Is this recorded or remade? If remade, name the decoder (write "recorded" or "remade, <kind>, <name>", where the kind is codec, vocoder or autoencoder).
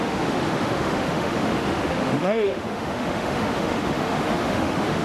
remade, autoencoder, DAC-VAE